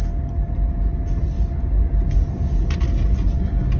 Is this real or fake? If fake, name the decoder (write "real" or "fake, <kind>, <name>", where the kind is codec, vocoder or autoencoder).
real